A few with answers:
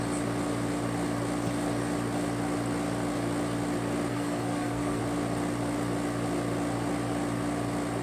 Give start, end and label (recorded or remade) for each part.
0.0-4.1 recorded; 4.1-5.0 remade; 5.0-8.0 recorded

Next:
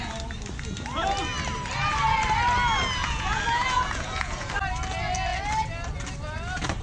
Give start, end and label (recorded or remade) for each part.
0.0-3.0 recorded; 3.0-4.5 remade; 4.5-6.8 recorded

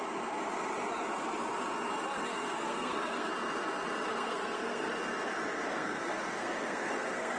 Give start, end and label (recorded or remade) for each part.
0.0-2.3 recorded; 2.3-3.3 remade; 3.3-4.1 recorded; 4.1-4.9 remade; 4.9-5.7 recorded; 5.7-7.4 remade

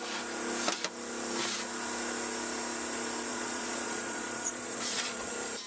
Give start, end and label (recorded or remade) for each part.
0.0-3.3 recorded; 3.3-5.3 remade; 5.3-5.7 recorded